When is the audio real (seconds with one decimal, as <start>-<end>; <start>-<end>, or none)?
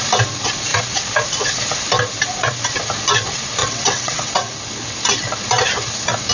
0.0-3.6; 4.5-6.3